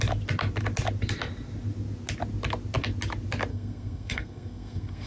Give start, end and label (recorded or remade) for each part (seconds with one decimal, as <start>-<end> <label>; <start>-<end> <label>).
0.0-3.5 recorded; 3.5-5.1 remade